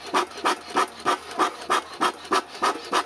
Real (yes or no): yes